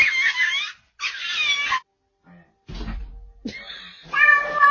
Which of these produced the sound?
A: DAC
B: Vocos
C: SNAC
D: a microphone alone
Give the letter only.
D